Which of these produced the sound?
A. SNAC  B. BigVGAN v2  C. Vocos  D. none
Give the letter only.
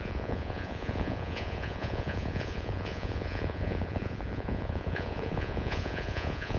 C